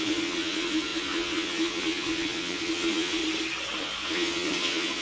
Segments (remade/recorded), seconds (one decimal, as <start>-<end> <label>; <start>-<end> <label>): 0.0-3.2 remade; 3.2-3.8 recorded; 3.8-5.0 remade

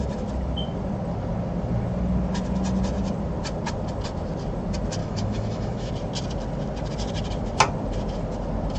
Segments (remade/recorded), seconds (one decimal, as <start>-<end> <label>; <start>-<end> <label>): 0.0-5.0 recorded; 5.0-5.9 remade; 5.9-8.8 recorded

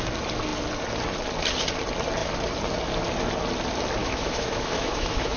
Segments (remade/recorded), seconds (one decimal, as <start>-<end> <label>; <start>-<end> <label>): 0.0-4.0 recorded; 4.0-5.4 remade